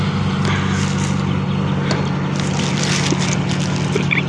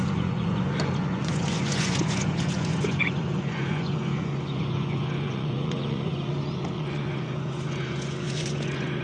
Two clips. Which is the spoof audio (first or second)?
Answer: second